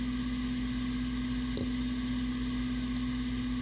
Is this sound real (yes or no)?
yes